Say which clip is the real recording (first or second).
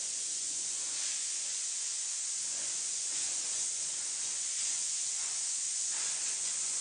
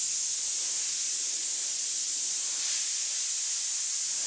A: second